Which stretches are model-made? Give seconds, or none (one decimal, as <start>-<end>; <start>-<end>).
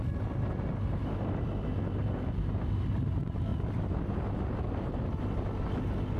1.0-1.7; 3.5-4.4